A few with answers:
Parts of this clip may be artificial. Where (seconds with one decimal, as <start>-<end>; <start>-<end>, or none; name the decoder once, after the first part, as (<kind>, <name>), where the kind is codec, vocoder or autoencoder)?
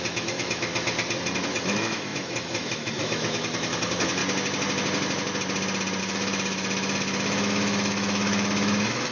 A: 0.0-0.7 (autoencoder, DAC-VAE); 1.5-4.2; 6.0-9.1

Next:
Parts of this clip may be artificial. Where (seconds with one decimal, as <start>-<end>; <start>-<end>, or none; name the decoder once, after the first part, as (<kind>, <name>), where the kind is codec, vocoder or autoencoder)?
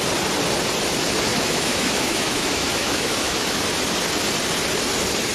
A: 1.3-3.6 (autoencoder, DAC-VAE)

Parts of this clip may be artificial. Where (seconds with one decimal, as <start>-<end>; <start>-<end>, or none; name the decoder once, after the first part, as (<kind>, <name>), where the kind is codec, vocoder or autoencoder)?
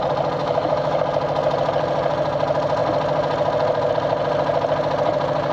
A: 0.4-1.0 (autoencoder, DAC-VAE)